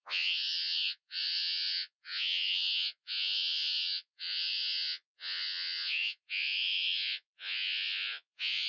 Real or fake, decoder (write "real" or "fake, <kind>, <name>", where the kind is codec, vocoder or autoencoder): fake, vocoder, Vocos